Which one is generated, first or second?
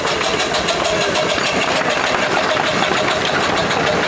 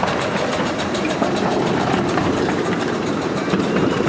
second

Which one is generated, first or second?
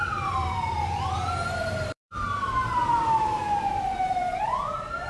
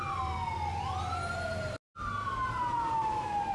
first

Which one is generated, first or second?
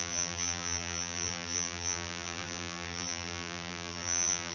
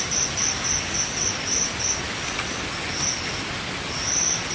first